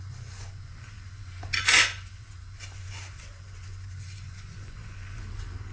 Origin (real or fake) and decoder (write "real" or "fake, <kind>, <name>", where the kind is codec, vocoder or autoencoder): fake, vocoder, Vocos